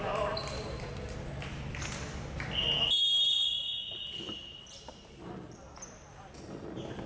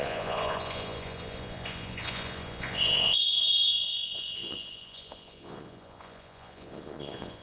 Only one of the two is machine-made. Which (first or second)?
second